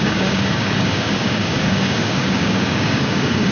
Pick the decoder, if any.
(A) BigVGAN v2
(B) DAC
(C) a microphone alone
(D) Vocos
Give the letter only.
B